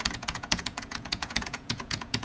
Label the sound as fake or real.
fake